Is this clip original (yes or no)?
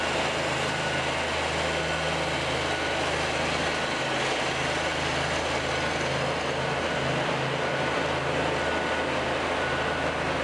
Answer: yes